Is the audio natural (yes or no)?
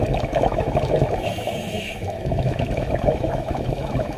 no